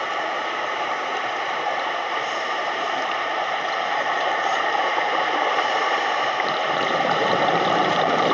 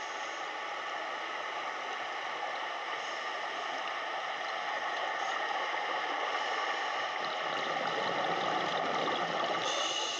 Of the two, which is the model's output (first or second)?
first